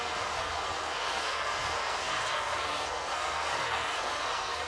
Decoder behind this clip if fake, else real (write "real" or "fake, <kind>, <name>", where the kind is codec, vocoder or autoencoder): fake, codec, SNAC